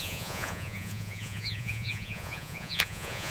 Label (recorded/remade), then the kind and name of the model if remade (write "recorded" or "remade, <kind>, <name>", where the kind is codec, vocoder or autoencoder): remade, vocoder, Vocos